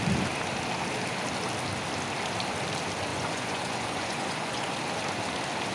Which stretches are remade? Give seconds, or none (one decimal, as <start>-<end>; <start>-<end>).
3.1-4.8